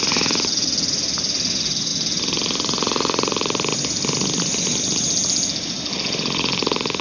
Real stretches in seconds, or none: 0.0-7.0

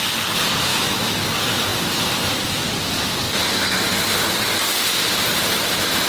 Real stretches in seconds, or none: 0.0-0.7; 1.2-6.1

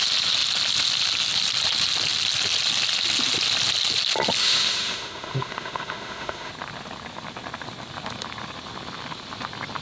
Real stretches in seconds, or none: 0.0-4.4; 6.5-9.8

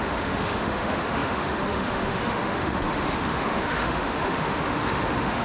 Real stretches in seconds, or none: none

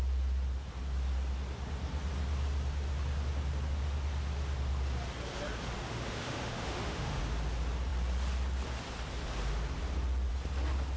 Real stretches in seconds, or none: 0.0-5.9; 7.2-11.0

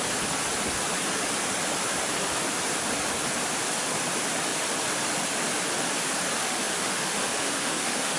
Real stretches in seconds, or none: 0.0-6.4

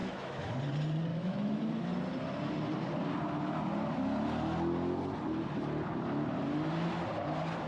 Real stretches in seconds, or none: 0.6-1.1; 1.7-7.7